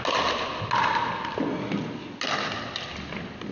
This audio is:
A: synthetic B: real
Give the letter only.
B